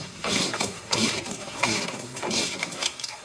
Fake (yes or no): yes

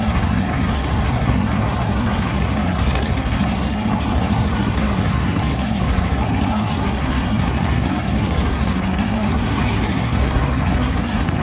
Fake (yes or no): yes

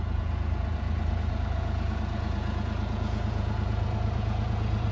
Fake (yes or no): yes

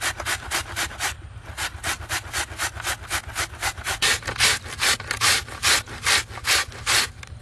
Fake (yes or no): no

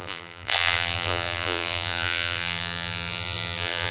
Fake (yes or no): yes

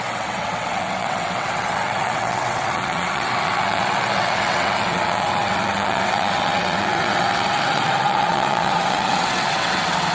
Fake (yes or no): yes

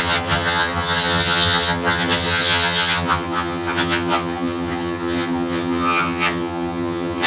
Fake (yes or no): yes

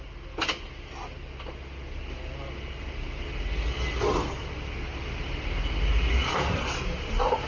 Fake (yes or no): no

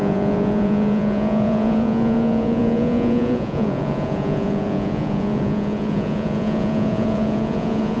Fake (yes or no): yes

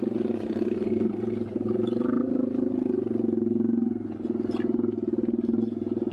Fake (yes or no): no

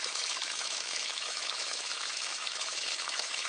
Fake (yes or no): yes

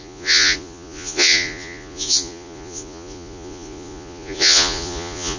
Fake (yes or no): yes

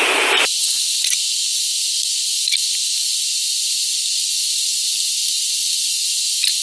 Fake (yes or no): yes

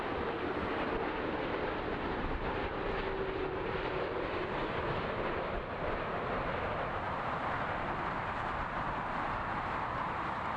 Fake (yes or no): no